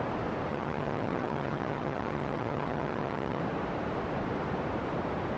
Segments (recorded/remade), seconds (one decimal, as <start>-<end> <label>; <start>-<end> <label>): 0.0-0.5 recorded; 0.5-3.4 remade; 3.4-5.4 recorded

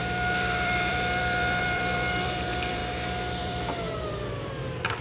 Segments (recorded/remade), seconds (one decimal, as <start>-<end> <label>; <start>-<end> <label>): 0.0-2.8 remade; 2.8-3.4 recorded; 3.4-5.0 remade

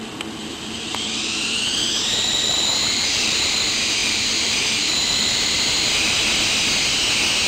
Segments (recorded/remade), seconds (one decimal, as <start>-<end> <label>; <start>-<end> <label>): 0.0-0.4 recorded; 0.4-3.6 remade; 3.6-4.0 recorded; 4.0-6.2 remade; 6.2-7.5 recorded

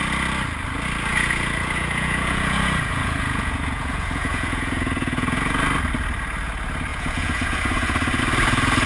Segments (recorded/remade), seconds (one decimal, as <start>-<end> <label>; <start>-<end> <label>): 0.0-1.1 recorded; 1.1-5.6 remade; 5.6-6.9 recorded; 6.9-8.2 remade; 8.2-8.9 recorded

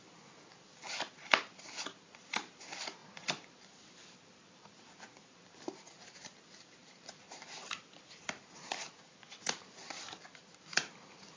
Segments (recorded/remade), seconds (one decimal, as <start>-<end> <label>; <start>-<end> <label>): 0.0-11.4 remade

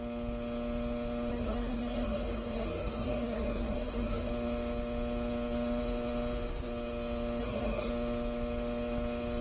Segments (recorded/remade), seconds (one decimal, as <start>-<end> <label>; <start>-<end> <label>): 0.0-1.3 recorded; 1.3-4.3 remade; 4.3-7.4 recorded; 7.4-7.9 remade; 7.9-9.4 recorded